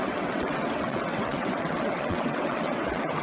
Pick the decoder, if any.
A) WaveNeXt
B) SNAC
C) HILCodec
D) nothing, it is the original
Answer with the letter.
A